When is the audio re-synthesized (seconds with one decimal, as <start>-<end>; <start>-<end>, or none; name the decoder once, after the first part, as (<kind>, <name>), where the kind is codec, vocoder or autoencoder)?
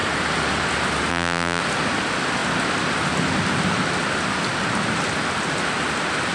1.1-1.6 (vocoder, BigVGAN v2)